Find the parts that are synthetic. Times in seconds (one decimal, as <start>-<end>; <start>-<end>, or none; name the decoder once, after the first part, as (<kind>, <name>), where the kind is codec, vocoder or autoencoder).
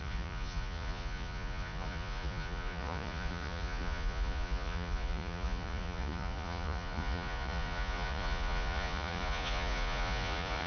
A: 0.0-10.7 (vocoder, Vocos)